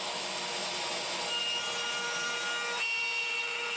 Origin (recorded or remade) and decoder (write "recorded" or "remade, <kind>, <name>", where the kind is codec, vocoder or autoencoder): recorded